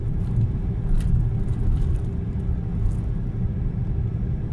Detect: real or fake real